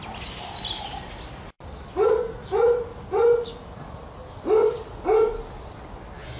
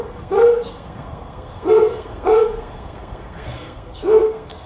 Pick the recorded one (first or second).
first